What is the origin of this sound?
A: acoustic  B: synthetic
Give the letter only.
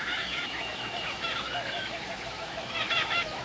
B